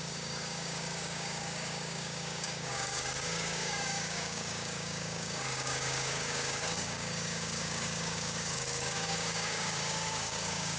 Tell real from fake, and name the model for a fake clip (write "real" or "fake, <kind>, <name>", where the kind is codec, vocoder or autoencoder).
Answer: fake, codec, DAC